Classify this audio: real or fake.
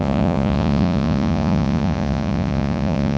fake